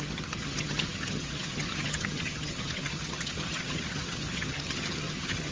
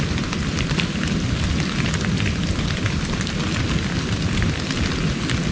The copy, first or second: first